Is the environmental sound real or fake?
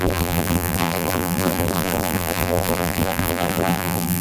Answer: fake